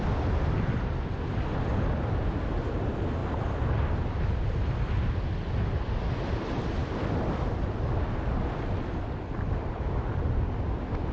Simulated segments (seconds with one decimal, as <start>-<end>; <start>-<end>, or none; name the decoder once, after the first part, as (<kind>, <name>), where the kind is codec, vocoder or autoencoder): none